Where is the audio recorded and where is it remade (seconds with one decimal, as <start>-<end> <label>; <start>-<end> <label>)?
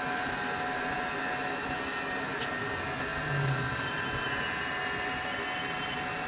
0.0-6.3 recorded